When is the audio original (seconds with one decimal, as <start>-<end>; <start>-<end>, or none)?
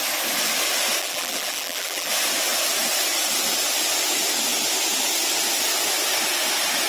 0.0-1.0; 2.1-6.9